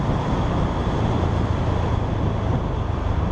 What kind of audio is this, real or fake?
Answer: real